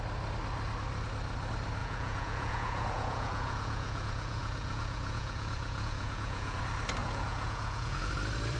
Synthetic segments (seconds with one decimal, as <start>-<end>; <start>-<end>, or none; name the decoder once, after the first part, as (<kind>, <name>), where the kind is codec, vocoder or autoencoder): 1.8-6.6 (vocoder, Vocos); 7.0-8.1